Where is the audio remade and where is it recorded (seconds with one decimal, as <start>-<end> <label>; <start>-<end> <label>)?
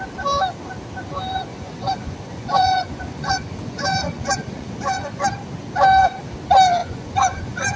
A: 0.0-1.5 recorded; 1.5-5.2 remade; 5.2-6.8 recorded; 6.8-7.8 remade